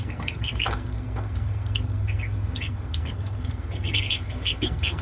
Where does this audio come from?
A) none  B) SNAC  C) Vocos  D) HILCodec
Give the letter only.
B